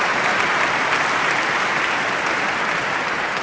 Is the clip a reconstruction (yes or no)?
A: no